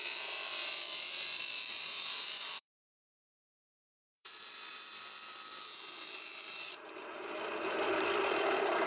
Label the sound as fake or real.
fake